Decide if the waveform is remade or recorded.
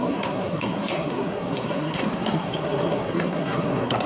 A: remade